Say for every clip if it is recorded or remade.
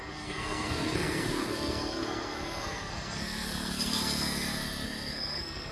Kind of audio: remade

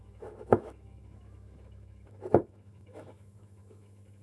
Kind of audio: remade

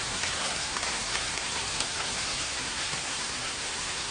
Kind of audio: remade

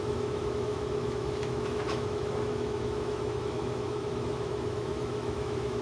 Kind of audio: remade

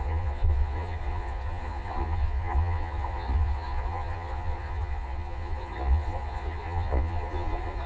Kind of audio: remade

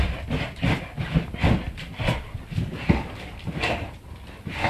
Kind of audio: recorded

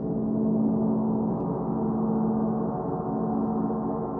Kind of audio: recorded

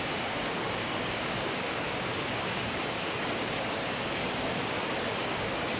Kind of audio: remade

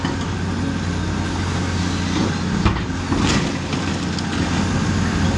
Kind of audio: recorded